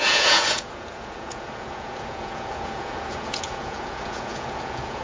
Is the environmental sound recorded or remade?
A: remade